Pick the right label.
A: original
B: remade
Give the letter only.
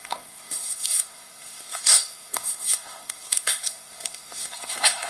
B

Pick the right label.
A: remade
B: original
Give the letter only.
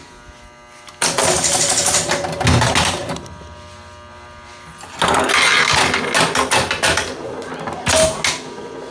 B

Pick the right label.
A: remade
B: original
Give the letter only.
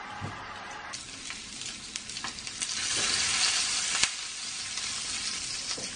B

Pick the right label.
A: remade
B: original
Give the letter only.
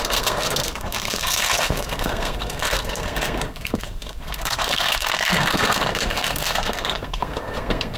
A